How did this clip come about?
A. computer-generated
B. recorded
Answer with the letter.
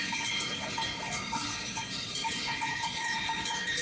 A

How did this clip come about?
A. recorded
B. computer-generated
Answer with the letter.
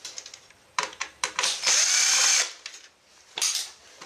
B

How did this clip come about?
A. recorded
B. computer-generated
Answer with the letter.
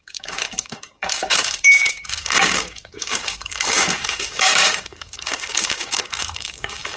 B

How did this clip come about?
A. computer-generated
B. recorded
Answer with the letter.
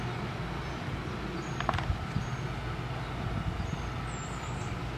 B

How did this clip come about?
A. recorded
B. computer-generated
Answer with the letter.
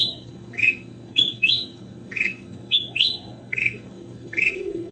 B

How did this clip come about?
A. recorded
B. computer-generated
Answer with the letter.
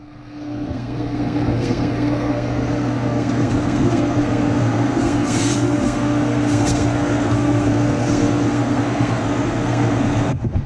B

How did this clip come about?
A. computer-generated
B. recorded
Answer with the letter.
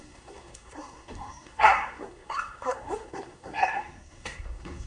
A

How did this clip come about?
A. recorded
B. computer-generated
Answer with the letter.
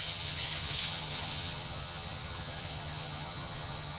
B